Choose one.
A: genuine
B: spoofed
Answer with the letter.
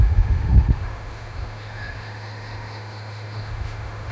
B